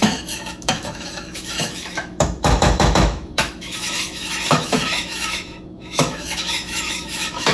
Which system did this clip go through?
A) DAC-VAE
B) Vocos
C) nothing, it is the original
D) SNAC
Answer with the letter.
A